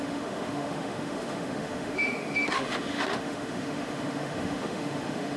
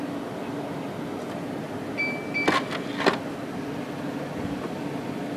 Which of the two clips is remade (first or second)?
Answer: first